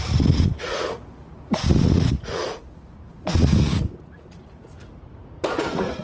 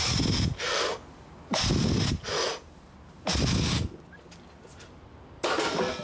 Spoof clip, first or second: first